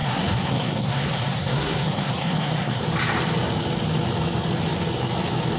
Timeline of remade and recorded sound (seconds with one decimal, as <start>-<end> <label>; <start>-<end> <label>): 0.0-2.8 remade; 2.8-5.6 recorded